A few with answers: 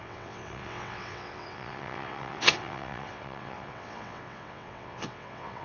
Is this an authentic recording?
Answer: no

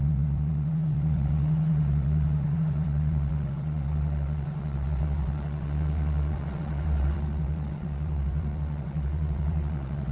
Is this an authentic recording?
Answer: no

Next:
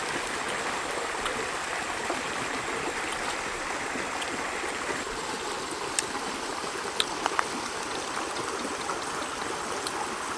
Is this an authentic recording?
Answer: yes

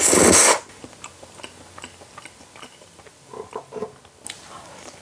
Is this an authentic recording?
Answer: yes